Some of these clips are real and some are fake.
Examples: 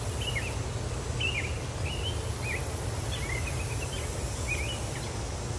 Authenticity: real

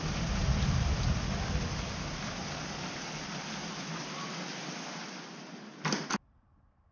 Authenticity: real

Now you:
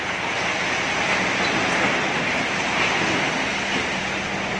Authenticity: real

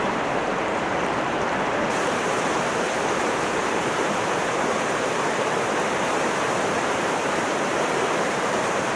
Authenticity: fake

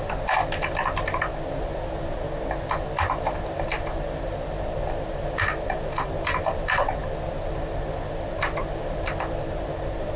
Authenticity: real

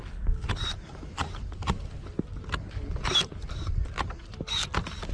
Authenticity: real